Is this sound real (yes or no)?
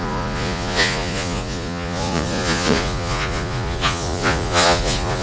no